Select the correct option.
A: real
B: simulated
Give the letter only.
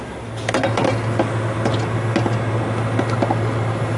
A